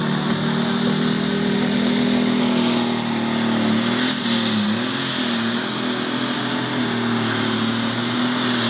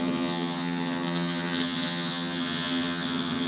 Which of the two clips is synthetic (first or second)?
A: second